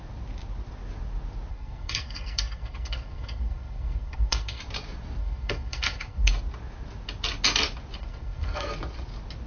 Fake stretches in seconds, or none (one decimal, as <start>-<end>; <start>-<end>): 1.5-4.6; 5.2-6.3; 8.0-8.7